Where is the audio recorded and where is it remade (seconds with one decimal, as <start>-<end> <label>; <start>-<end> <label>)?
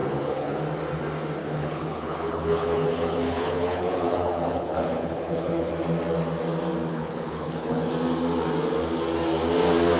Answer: 0.0-0.6 remade; 0.6-1.4 recorded; 1.4-5.7 remade; 5.7-6.9 recorded; 6.9-7.9 remade; 7.9-10.0 recorded